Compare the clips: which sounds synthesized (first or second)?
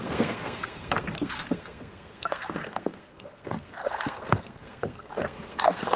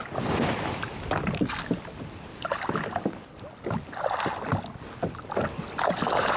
first